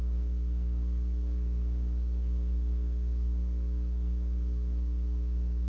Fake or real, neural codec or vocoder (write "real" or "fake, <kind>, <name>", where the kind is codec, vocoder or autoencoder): fake, codec, SNAC